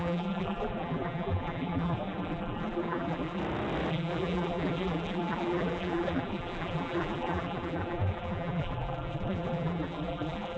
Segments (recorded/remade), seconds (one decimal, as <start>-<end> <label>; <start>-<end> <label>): 0.0-3.4 remade; 3.4-3.9 recorded; 3.9-10.6 remade